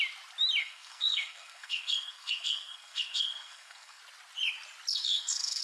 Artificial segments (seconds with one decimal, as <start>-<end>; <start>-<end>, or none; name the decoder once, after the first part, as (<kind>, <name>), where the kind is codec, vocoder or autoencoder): 0.6-4.0 (codec, SNAC); 4.9-5.6